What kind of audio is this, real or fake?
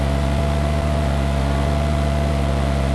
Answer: real